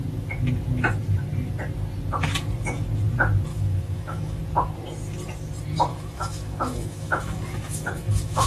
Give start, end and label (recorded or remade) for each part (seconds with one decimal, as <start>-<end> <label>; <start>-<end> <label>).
0.0-3.5 recorded; 3.5-4.4 remade; 4.4-5.9 recorded; 5.9-8.5 remade